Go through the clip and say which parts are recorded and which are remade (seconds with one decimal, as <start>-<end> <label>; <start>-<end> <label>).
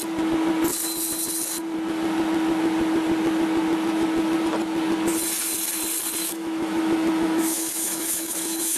0.0-6.2 recorded; 6.2-8.8 remade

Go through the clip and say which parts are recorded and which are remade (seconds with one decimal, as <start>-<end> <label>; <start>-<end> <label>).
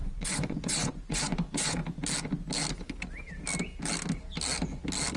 0.0-1.8 remade; 1.8-5.2 recorded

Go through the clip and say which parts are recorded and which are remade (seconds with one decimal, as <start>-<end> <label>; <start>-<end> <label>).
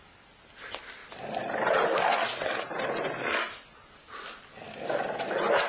0.0-5.7 recorded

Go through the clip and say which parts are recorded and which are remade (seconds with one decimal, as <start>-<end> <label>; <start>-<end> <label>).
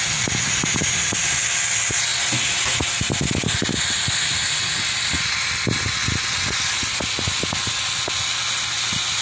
0.0-9.2 recorded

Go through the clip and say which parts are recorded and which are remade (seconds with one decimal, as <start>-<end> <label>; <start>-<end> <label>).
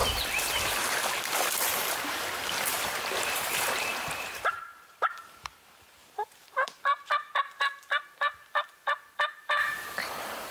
0.0-1.6 recorded; 1.6-6.9 remade; 6.9-8.2 recorded; 8.2-10.5 remade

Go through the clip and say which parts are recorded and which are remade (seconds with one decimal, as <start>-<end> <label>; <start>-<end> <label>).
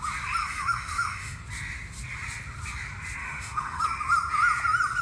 0.0-0.4 recorded; 0.4-1.4 remade; 1.4-3.2 recorded; 3.2-3.8 remade; 3.8-5.0 recorded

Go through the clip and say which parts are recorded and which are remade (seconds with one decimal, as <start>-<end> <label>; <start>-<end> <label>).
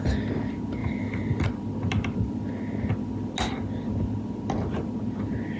0.0-5.6 recorded